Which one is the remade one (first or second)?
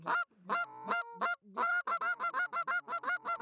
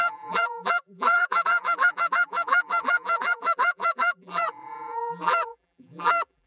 second